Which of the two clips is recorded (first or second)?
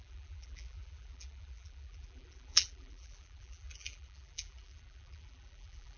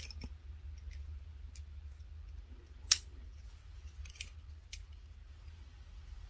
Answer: second